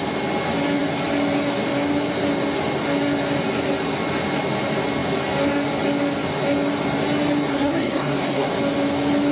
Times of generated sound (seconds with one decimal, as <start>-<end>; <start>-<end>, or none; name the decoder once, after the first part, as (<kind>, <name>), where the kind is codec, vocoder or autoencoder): 7.5-8.5 (codec, SNAC)